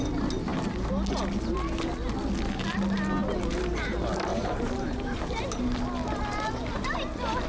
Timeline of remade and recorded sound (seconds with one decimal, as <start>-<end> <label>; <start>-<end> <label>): 0.0-4.3 recorded; 4.3-5.8 remade; 5.8-7.5 recorded